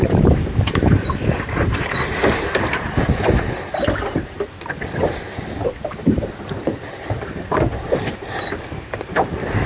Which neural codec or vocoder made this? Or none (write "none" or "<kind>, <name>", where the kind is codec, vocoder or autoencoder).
vocoder, BigVGAN v2